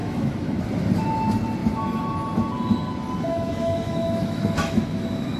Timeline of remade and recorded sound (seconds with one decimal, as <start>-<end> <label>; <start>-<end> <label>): 0.0-0.6 remade; 0.6-3.3 recorded; 3.3-5.4 remade